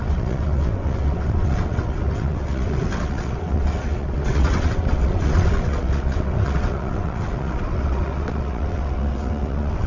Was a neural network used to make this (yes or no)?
yes